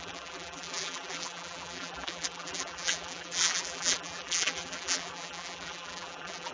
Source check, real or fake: fake